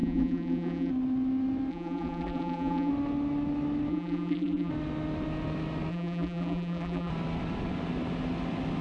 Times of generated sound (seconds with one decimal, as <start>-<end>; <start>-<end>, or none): 0.0-0.9; 1.7-2.9; 3.9-4.7; 5.9-7.1